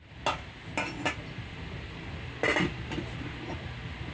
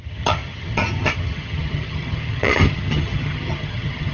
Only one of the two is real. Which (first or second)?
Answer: first